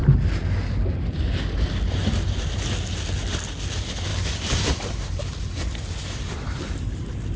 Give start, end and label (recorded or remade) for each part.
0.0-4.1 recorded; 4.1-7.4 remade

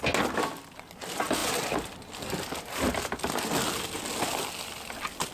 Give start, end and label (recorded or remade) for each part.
0.0-5.3 recorded

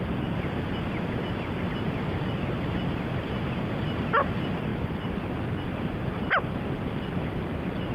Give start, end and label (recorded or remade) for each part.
0.0-7.9 recorded

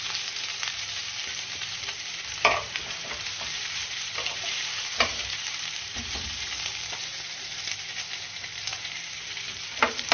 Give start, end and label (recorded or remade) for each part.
0.0-10.1 remade

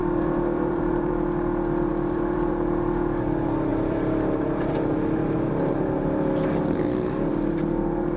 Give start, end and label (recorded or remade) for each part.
0.0-1.1 remade; 1.1-1.9 recorded; 1.9-2.5 remade; 2.5-3.7 recorded; 3.7-5.5 remade; 5.5-8.2 recorded